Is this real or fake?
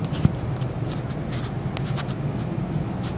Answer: real